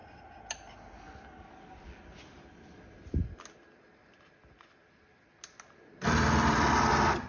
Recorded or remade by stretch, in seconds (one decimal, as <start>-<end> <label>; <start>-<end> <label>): 0.0-7.3 recorded